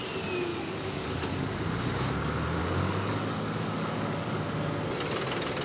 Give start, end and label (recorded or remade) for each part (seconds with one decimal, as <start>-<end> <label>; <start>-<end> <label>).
0.0-0.5 recorded; 0.5-2.1 remade; 2.1-2.6 recorded; 2.6-4.5 remade; 4.5-5.6 recorded